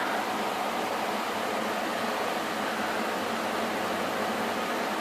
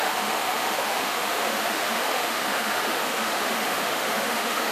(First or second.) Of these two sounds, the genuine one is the first